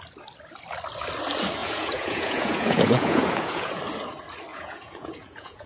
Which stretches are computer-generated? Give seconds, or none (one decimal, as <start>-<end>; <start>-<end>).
1.6-3.8; 4.5-5.7